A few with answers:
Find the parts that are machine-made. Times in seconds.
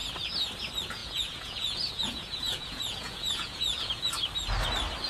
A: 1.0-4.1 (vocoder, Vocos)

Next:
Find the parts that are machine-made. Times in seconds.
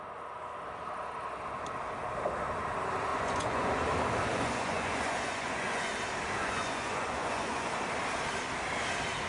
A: 3.1-3.7 (vocoder, Vocos); 4.3-5.9; 6.4-7.7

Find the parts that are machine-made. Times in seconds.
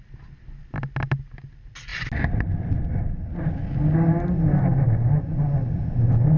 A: none